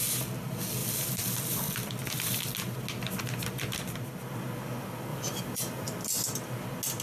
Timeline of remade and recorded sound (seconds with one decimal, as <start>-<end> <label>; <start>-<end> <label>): 0.0-0.8 recorded; 0.8-1.7 remade; 1.7-5.1 recorded; 5.1-6.1 remade; 6.1-7.0 recorded